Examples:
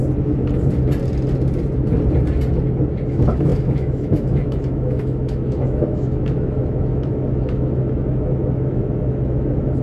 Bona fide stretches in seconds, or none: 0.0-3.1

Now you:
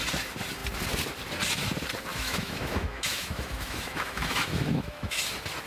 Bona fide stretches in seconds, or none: 0.0-2.1; 5.2-5.7

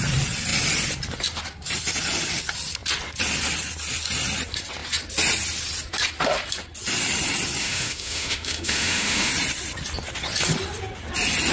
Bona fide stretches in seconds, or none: 0.0-7.6; 9.3-11.5

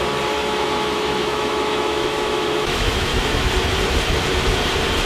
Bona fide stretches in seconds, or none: 0.0-0.4; 3.5-5.1

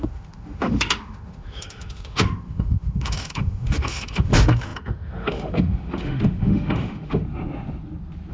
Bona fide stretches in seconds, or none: 7.2-8.3

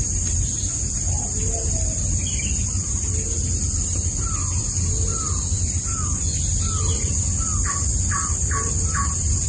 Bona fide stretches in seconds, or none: 0.0-9.5

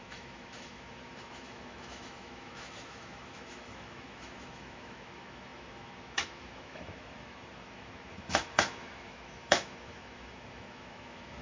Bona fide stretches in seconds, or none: none